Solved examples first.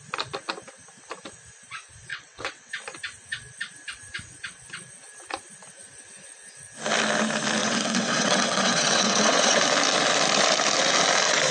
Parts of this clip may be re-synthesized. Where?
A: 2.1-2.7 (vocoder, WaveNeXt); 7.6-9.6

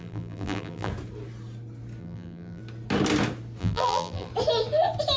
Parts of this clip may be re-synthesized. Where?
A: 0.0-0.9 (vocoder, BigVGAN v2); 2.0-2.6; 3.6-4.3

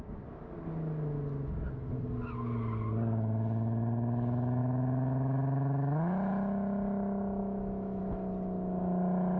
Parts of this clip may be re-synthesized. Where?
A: 4.6-6.3 (autoencoder, DAC-VAE); 7.4-8.0